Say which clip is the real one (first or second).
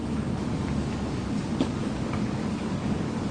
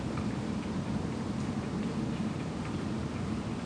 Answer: second